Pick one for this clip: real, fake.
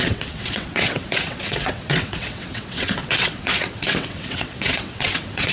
fake